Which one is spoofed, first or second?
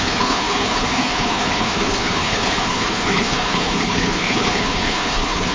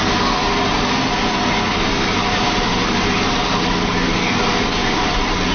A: first